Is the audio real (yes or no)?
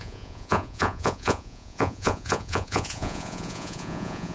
no